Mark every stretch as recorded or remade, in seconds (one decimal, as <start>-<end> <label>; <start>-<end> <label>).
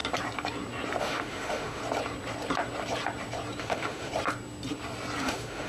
0.0-1.0 recorded; 1.0-1.8 remade; 1.8-3.6 recorded; 3.6-4.1 remade; 4.1-5.2 recorded; 5.2-5.7 remade